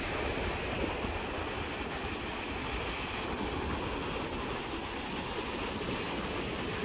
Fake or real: real